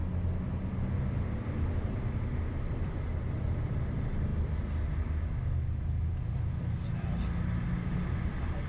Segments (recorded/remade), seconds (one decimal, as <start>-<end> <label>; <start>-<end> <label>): 0.0-8.7 recorded